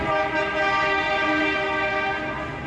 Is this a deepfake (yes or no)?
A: no